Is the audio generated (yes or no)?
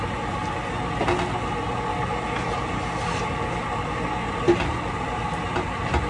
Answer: no